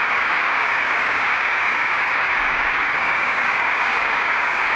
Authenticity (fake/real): fake